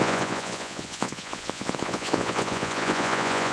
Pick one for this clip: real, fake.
fake